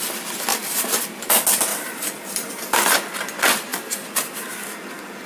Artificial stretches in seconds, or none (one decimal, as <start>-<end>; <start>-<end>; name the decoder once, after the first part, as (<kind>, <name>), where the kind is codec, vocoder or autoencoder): 0.5-1.2 (vocoder, BigVGAN v2); 1.7-2.5; 3.7-5.3